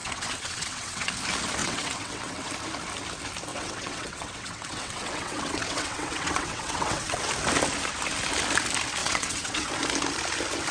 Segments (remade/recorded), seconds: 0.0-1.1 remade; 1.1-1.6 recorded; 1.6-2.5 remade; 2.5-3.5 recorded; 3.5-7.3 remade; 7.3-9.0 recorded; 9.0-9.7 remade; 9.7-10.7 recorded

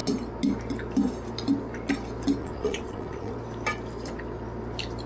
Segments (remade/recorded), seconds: 0.0-2.4 recorded; 2.4-3.3 remade; 3.3-5.1 recorded

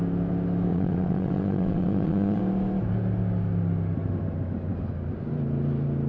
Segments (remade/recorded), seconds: 0.0-0.7 recorded; 0.7-2.4 remade; 2.4-6.1 recorded

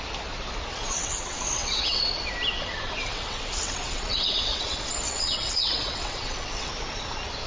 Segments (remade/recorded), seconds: 0.0-0.7 recorded; 0.7-2.0 remade; 2.0-3.0 recorded; 3.0-6.7 remade; 6.7-7.5 recorded

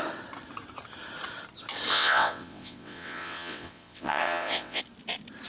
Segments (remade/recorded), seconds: 0.0-1.9 recorded; 1.9-4.8 remade; 4.8-5.5 recorded

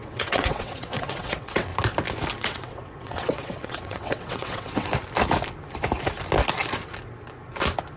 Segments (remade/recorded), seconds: 0.0-1.7 remade; 1.7-2.4 recorded; 2.4-4.9 remade; 4.9-8.0 recorded

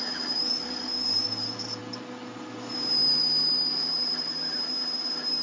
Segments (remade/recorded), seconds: 0.0-5.4 recorded

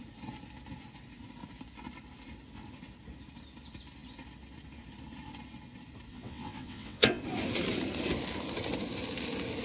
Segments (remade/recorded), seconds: 0.0-6.1 recorded; 6.1-7.2 remade; 7.2-9.6 recorded